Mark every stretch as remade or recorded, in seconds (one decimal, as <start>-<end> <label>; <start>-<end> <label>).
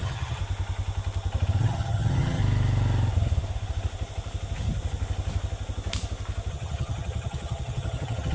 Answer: 0.0-0.4 remade; 0.4-1.6 recorded; 1.6-2.4 remade; 2.4-6.5 recorded; 6.5-8.3 remade